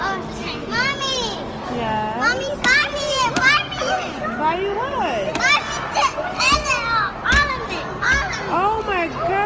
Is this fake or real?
real